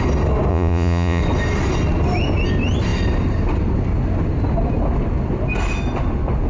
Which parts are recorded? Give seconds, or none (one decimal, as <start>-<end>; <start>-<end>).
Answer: 0.0-0.5; 1.2-6.5